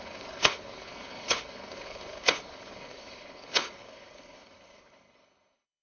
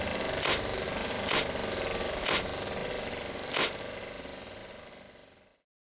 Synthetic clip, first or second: first